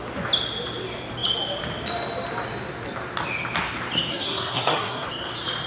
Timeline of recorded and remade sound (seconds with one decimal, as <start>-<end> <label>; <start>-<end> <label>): 0.0-4.1 recorded; 4.1-5.1 remade; 5.1-5.7 recorded

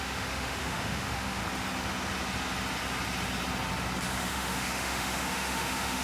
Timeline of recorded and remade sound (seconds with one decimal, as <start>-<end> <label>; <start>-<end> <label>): 0.0-1.4 remade; 1.4-4.2 recorded; 4.2-6.0 remade

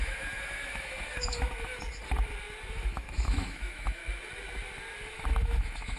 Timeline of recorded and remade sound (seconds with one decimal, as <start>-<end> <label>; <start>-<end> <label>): 0.0-1.7 remade; 1.7-2.7 recorded; 2.7-4.0 remade; 4.0-5.0 recorded; 5.0-6.0 remade

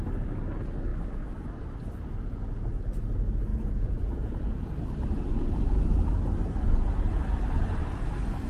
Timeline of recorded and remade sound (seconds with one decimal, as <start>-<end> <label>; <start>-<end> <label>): 0.0-3.5 recorded; 3.5-4.7 remade; 4.7-8.5 recorded

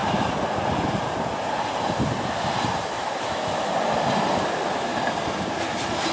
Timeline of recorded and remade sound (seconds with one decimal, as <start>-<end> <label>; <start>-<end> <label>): 0.0-6.1 recorded

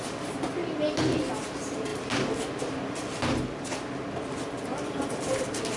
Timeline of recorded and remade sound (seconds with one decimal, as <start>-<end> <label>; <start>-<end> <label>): 0.0-5.8 recorded

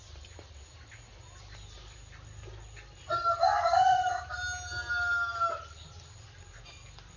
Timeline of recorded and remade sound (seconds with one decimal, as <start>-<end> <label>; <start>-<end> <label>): 0.0-3.5 recorded; 3.5-4.2 remade; 4.2-7.2 recorded